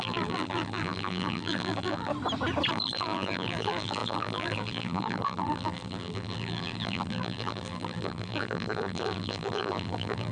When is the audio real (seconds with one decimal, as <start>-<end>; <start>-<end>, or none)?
2.1-2.7